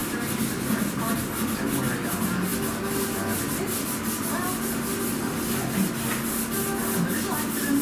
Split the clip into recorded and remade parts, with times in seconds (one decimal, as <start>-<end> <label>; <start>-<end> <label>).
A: 0.0-7.8 recorded